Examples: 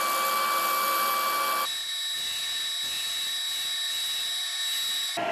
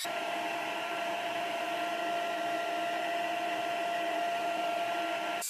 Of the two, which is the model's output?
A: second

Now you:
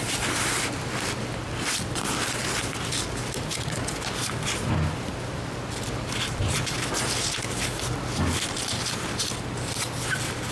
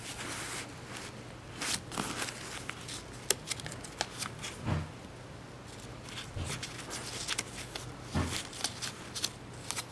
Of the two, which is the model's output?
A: first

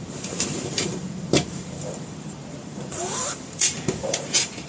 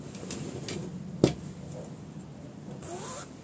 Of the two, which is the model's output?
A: first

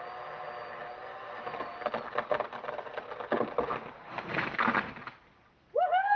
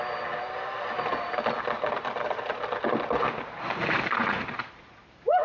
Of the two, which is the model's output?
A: second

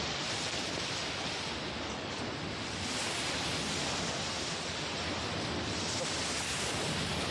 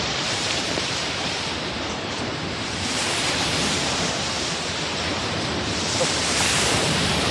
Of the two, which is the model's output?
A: second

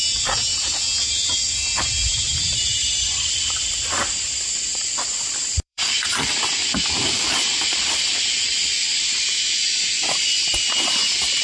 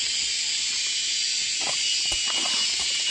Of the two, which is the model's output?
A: first